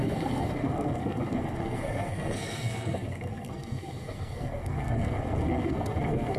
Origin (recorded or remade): remade